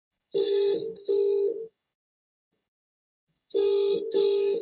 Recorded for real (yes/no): no